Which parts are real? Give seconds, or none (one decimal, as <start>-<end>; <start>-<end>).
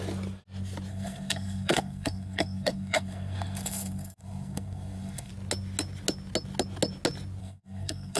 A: 0.0-0.9; 5.3-7.4